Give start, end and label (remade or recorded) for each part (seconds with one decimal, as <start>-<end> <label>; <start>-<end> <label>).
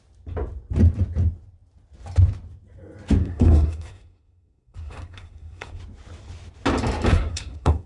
0.0-3.2 recorded; 3.2-5.8 remade; 5.8-7.1 recorded; 7.1-7.9 remade